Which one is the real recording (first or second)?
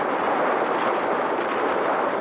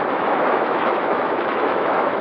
first